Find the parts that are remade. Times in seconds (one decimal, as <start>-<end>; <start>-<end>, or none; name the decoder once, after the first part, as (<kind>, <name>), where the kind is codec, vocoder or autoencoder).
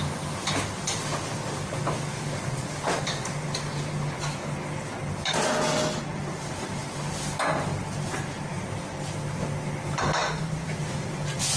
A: 6.1-6.8 (vocoder, BigVGAN v2); 7.7-8.8; 10.2-10.8